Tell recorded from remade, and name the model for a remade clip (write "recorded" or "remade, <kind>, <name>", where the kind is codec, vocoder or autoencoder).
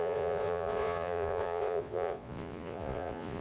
remade, vocoder, Vocos